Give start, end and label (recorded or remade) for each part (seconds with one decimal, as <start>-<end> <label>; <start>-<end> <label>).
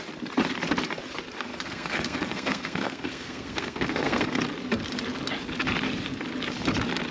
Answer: 0.0-1.5 recorded; 1.5-4.4 remade; 4.4-7.1 recorded